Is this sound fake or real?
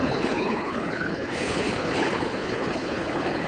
fake